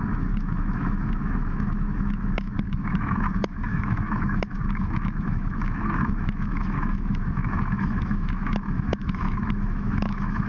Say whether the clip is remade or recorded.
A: remade